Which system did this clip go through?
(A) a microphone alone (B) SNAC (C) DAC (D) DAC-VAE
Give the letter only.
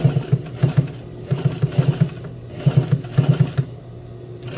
A